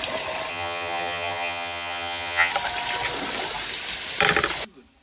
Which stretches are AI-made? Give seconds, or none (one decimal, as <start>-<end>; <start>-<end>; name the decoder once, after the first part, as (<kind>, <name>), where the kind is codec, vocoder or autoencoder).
0.5-2.5 (vocoder, HiFi-GAN)